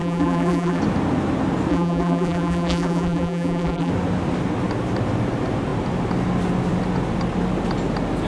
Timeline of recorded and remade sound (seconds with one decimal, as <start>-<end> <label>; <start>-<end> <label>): 0.0-0.8 remade; 0.8-1.7 recorded; 1.7-3.9 remade; 3.9-8.3 recorded